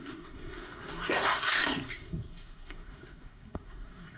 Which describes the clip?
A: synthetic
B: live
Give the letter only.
A